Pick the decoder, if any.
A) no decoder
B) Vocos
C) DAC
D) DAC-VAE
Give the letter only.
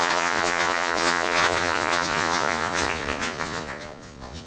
B